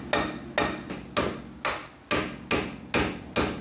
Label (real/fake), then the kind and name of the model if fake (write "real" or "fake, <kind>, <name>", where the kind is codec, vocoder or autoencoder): real